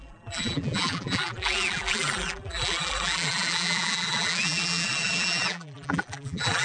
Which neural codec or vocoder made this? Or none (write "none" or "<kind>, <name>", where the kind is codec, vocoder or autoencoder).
vocoder, BigVGAN v2